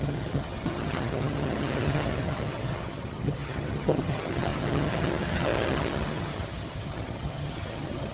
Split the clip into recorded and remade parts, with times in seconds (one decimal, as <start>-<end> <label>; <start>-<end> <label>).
0.0-8.1 remade